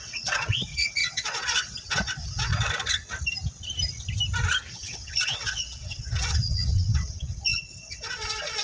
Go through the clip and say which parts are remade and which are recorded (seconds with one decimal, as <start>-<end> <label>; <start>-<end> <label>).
0.0-2.5 remade; 2.5-4.7 recorded; 4.7-8.6 remade